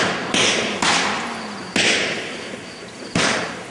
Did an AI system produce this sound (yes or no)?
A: no